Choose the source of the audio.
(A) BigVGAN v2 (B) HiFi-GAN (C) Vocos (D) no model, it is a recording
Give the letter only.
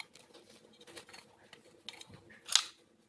D